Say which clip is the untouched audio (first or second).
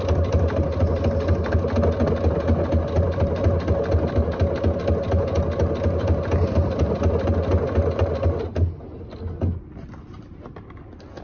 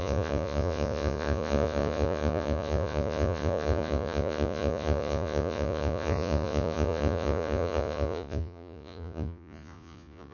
first